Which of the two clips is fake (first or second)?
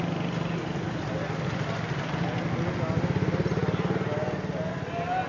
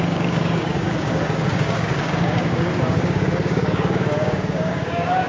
second